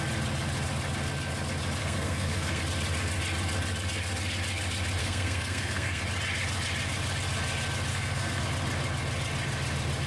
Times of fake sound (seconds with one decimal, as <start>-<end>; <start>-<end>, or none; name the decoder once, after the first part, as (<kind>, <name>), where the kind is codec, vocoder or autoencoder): 1.8-2.6 (codec, SNAC); 5.0-6.0; 7.9-8.4